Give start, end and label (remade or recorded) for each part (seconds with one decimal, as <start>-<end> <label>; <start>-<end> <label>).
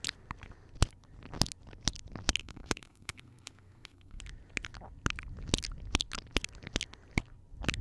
0.0-2.4 recorded; 2.4-4.2 remade; 4.2-7.8 recorded